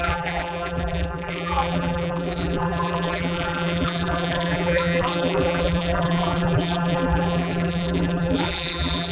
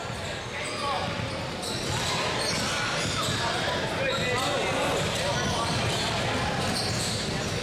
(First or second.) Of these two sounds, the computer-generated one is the first